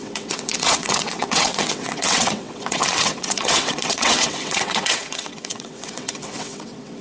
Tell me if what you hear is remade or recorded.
remade